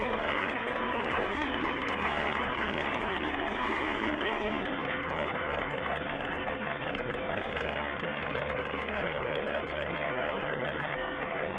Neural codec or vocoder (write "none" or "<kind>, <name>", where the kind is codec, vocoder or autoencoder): codec, SNAC